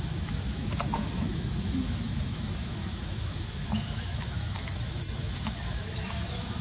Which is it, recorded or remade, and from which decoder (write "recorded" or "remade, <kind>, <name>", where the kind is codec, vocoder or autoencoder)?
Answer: remade, autoencoder, DAC-VAE